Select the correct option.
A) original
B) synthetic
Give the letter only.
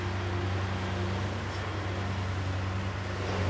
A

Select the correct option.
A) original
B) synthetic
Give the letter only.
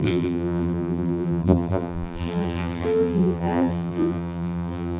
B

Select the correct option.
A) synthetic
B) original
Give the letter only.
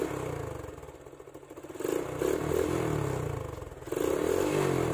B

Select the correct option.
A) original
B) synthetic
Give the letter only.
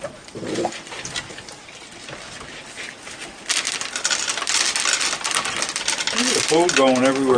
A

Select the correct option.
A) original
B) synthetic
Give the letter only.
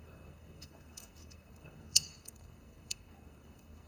B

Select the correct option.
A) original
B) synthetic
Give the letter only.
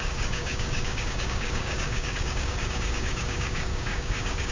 B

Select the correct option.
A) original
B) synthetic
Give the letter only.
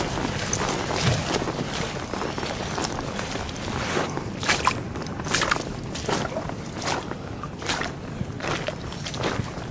B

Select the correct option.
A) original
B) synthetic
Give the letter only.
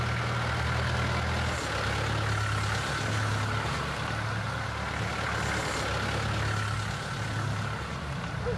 A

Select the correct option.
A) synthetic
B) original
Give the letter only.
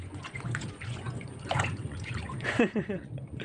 A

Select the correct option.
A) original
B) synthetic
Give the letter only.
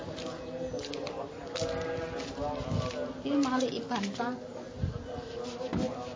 A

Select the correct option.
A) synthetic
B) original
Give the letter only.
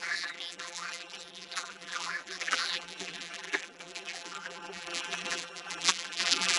A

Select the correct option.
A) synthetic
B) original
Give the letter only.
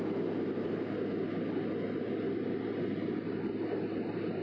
B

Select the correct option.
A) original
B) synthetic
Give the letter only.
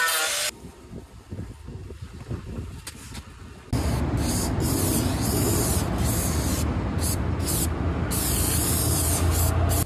A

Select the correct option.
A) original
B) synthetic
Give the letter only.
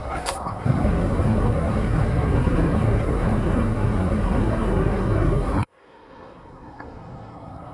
B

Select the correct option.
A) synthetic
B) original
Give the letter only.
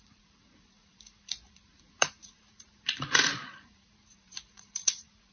A